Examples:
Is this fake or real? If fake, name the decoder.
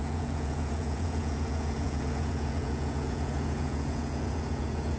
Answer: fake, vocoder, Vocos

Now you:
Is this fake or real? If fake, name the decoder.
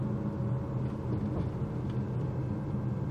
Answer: real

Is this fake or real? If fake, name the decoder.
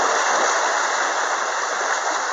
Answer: real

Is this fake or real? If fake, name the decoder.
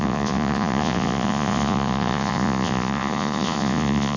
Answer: fake, vocoder, Vocos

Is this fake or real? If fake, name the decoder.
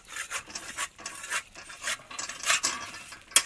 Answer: real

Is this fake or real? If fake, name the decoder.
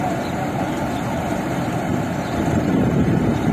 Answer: fake, vocoder, BigVGAN v2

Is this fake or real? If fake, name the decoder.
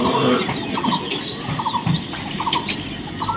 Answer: real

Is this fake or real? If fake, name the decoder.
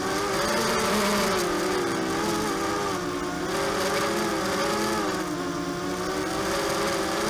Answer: real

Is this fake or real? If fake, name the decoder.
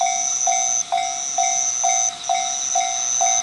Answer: real